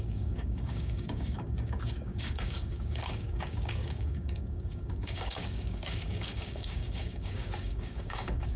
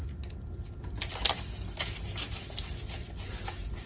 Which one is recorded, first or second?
second